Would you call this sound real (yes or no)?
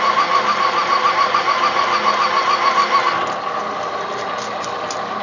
yes